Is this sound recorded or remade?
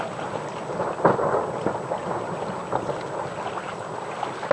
recorded